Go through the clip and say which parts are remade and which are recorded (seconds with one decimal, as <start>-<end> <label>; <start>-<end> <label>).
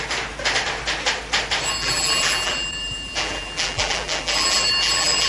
0.0-1.8 recorded; 1.8-5.3 remade